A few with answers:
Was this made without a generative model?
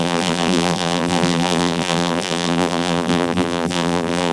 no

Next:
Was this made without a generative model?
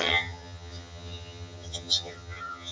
no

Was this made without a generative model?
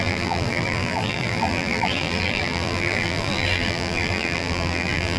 no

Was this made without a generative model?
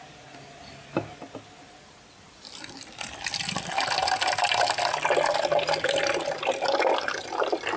yes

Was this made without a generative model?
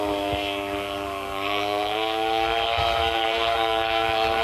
no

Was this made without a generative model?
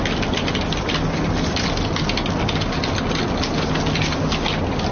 yes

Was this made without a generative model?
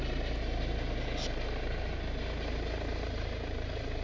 yes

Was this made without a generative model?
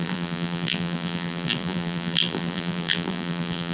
no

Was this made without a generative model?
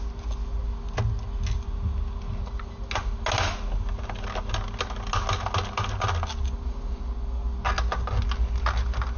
yes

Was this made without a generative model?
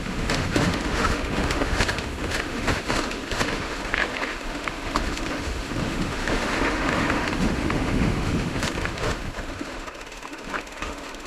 no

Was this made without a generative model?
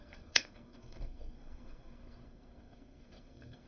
no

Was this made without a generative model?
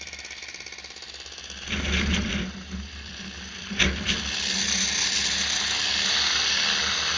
yes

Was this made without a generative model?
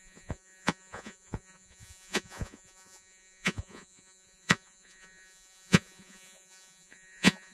no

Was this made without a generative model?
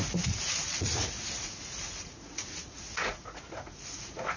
no